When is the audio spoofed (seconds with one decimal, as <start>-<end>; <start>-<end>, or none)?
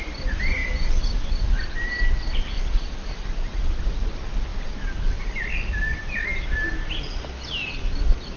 none